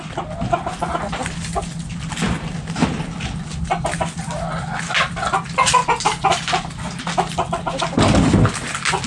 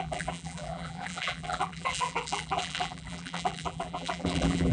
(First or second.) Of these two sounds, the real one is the first